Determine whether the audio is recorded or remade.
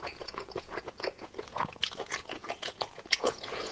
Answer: remade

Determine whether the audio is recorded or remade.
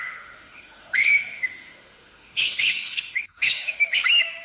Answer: remade